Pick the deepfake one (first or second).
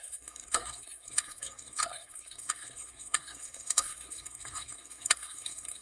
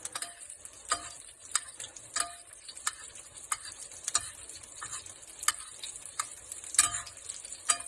first